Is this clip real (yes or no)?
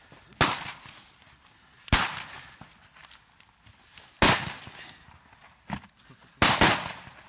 yes